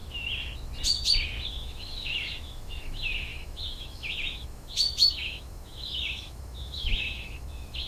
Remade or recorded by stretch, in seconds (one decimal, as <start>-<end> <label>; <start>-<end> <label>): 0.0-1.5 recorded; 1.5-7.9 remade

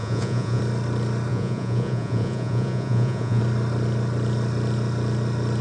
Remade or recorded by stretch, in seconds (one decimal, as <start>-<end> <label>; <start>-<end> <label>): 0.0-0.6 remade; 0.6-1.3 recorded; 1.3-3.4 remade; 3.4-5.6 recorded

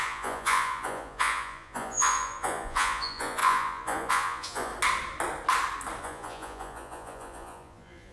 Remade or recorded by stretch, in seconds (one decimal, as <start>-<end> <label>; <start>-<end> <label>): 0.0-4.7 remade; 4.7-6.0 recorded; 6.0-8.1 remade